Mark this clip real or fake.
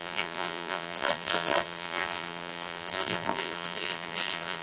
fake